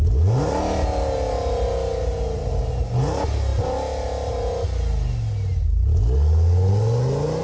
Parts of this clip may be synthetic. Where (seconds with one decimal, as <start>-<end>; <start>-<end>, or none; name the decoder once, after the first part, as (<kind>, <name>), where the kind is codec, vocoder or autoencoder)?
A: none